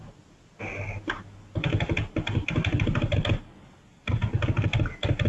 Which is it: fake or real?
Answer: real